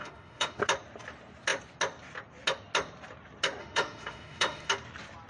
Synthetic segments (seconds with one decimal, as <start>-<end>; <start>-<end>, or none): 0.0-0.6; 3.6-4.7